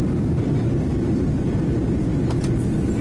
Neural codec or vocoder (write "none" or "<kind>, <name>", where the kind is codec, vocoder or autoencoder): none